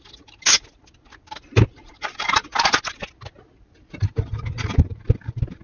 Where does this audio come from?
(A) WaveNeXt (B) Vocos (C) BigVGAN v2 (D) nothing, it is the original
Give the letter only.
D